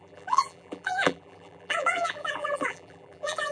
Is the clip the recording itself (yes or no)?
no